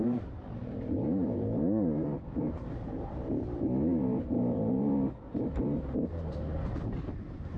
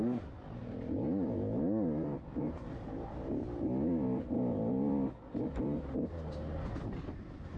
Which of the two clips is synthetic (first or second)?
first